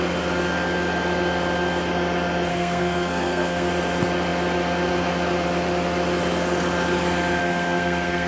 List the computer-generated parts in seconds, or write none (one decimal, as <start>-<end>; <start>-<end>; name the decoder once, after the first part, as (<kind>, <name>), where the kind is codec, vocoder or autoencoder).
2.5-3.7 (codec, SNAC); 7.4-8.3